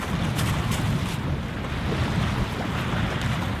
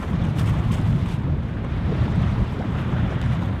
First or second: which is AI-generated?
second